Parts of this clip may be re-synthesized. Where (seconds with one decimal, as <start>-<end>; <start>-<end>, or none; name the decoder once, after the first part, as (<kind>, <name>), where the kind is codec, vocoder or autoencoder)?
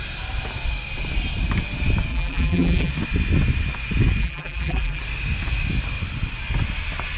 2.1-2.9 (vocoder, BigVGAN v2); 4.2-5.0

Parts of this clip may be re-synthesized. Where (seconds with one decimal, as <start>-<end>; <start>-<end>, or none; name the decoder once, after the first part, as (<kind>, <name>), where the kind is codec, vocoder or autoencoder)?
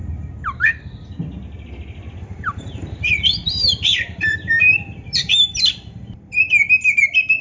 2.2-7.4 (vocoder, BigVGAN v2)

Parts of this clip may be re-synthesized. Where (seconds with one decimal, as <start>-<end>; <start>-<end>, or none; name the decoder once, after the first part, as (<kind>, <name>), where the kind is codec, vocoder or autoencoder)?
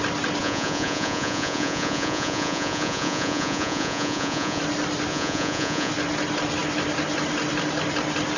0.4-4.6 (vocoder, Vocos); 5.1-5.9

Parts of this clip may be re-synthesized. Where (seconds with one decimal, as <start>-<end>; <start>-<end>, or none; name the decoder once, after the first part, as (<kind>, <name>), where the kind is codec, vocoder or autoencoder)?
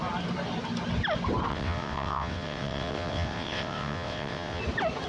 1.5-4.6 (vocoder, WaveNeXt)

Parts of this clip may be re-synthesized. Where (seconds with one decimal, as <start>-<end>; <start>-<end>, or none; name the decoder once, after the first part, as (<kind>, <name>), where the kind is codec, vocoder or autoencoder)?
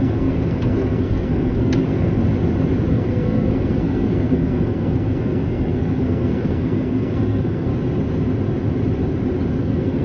0.0-2.2 (codec, SNAC); 2.9-7.7; 9.6-10.0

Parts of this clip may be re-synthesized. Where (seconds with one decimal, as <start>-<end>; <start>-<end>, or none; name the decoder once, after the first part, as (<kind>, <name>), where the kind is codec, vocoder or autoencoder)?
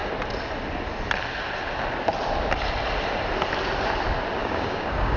4.4-5.2 (codec, DAC)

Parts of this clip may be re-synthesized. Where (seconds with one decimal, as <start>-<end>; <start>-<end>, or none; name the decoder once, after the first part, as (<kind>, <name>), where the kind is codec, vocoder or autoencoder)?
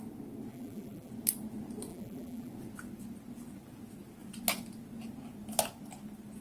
0.5-1.1 (vocoder, BigVGAN v2); 1.9-2.5